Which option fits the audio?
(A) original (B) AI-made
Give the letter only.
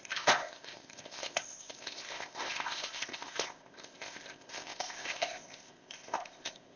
B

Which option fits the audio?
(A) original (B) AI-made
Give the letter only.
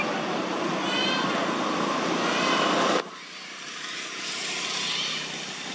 A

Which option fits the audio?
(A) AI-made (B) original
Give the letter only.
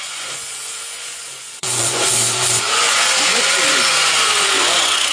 A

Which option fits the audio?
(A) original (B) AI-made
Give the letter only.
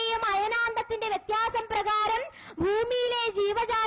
A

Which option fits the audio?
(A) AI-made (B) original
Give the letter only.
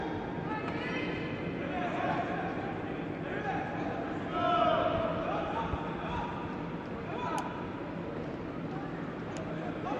B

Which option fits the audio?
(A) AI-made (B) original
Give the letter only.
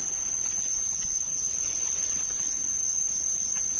B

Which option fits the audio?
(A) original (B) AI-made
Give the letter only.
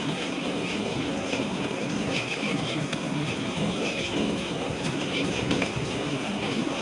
B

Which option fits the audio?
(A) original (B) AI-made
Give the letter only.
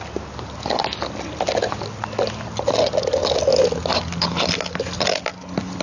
A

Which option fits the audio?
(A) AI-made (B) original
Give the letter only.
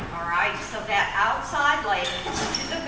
B